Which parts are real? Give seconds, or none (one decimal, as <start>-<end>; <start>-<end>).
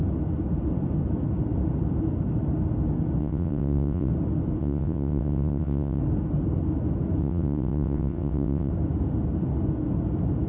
0.0-3.2; 4.1-4.6; 6.0-7.2; 8.7-10.5